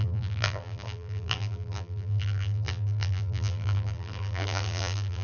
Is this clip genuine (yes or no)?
no